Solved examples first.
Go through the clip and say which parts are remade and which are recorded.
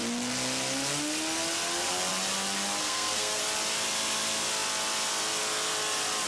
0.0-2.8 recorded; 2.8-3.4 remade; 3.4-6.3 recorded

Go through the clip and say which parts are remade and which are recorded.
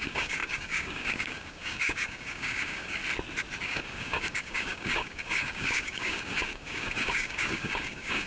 0.0-3.0 remade; 3.0-3.6 recorded; 3.6-8.3 remade